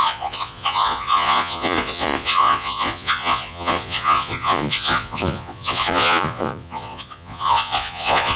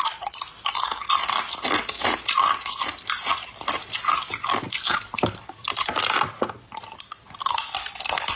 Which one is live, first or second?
second